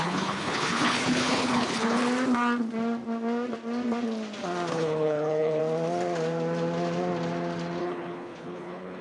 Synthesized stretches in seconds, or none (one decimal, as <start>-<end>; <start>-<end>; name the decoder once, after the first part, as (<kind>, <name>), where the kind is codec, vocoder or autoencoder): 0.0-2.0 (codec, HILCodec); 4.7-5.6; 7.8-9.0